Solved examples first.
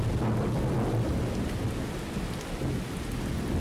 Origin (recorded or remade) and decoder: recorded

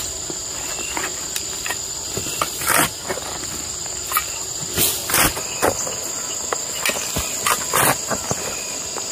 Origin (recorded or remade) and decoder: recorded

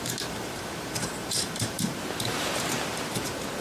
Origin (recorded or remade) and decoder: remade, vocoder, BigVGAN v2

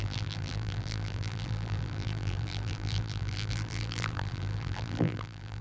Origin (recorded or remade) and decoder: remade, vocoder, BigVGAN v2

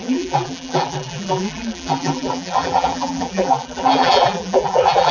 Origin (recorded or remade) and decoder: remade, vocoder, BigVGAN v2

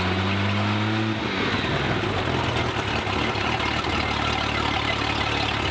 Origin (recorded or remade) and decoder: recorded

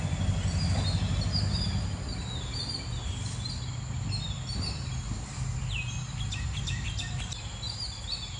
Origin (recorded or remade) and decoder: recorded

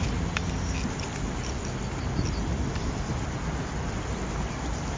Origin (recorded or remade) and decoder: recorded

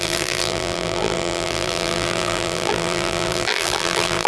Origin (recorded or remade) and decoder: remade, vocoder, BigVGAN v2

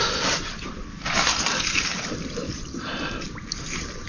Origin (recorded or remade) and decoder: remade, vocoder, BigVGAN v2